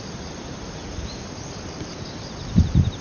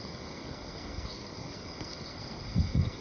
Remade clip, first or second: second